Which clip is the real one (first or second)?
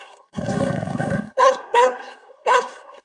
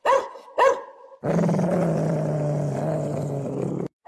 second